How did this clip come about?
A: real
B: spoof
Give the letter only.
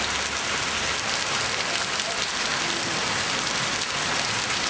A